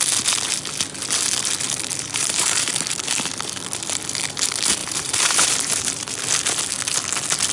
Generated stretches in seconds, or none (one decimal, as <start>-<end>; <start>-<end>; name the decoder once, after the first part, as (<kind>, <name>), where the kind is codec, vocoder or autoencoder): 1.9-2.7 (vocoder, BigVGAN v2); 4.8-6.1